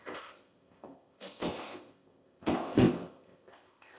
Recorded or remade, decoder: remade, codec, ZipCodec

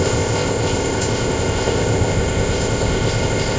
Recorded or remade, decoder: remade, codec, ZipCodec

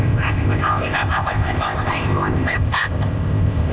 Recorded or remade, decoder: remade, codec, ZipCodec